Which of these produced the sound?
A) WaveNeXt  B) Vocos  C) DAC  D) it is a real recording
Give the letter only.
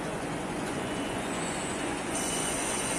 B